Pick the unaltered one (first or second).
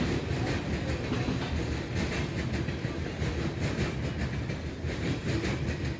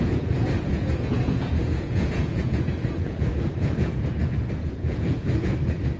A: first